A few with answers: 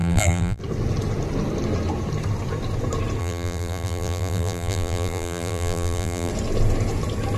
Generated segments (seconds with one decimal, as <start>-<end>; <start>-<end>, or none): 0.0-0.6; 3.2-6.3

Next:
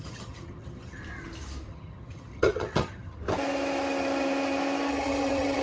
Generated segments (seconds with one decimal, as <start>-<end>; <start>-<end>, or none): 0.0-1.0; 1.7-3.2; 4.9-5.6

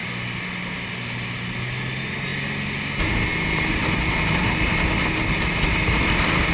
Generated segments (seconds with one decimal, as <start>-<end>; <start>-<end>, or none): none